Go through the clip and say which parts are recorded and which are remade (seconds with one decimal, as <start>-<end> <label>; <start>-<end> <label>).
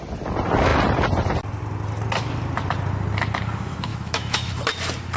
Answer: 0.0-3.9 recorded; 3.9-4.5 remade; 4.5-5.2 recorded